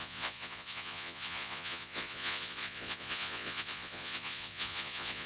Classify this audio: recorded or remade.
remade